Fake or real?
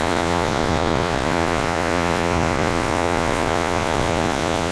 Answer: fake